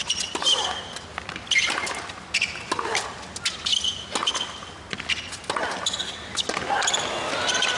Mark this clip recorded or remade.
recorded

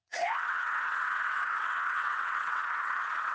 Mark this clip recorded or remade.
remade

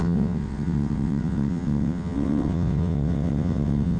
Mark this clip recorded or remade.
remade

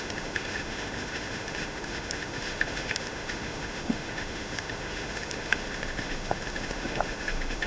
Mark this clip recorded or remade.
remade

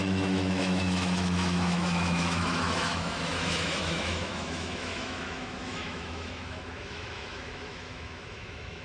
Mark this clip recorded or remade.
remade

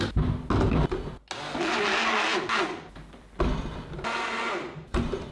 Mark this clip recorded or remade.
recorded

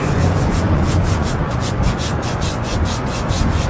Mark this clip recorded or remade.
remade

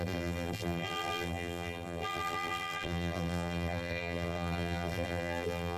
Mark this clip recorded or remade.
remade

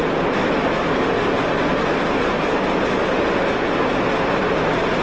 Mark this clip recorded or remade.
recorded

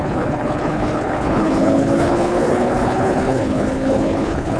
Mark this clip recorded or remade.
remade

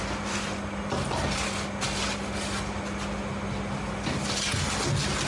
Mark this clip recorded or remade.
recorded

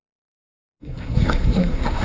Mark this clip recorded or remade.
remade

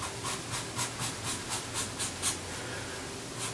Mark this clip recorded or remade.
recorded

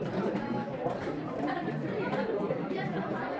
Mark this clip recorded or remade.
remade